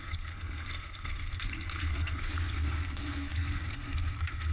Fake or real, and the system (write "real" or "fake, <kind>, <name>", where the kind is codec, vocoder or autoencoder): fake, codec, SNAC